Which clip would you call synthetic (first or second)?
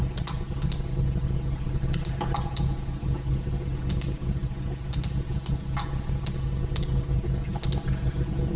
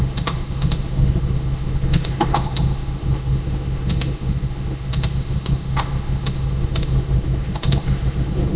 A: second